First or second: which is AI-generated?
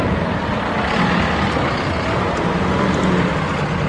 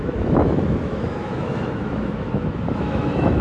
second